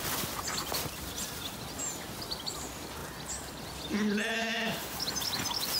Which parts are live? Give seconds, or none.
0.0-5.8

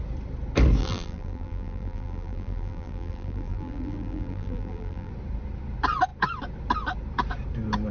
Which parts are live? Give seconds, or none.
0.0-0.8; 5.1-7.9

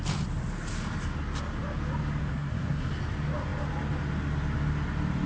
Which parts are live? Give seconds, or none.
0.0-2.2; 2.9-5.3

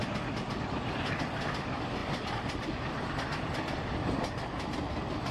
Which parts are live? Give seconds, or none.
0.0-2.0; 4.8-5.3